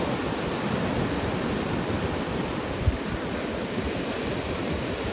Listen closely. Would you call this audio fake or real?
fake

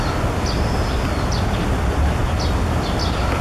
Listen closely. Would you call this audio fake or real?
real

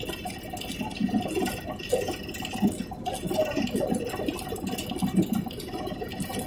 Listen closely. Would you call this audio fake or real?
real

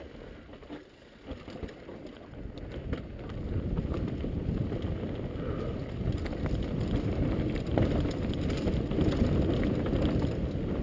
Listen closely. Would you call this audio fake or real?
real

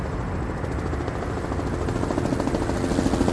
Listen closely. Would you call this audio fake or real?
real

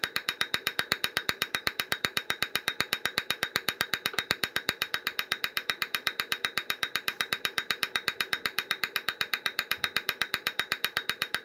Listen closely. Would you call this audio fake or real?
fake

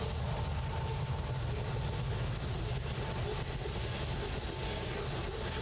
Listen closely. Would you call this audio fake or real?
real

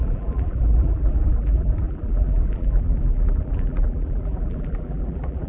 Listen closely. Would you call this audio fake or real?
fake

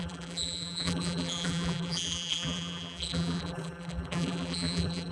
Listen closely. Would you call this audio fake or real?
fake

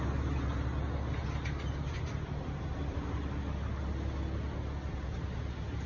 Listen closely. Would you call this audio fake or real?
real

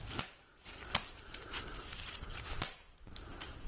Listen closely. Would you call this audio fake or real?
fake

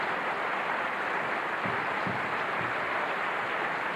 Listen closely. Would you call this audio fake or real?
fake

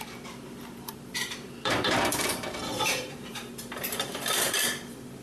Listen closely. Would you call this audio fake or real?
fake